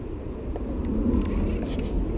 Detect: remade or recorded recorded